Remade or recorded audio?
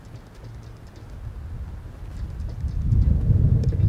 recorded